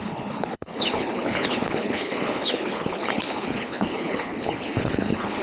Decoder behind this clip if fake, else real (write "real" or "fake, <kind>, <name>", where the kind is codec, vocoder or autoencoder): fake, codec, HILCodec